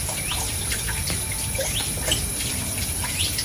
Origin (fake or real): real